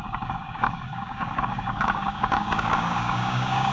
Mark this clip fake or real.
fake